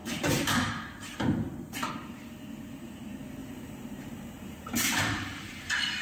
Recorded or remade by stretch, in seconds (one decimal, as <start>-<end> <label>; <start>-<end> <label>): 0.0-1.9 remade; 1.9-3.4 recorded; 3.4-5.5 remade; 5.5-6.0 recorded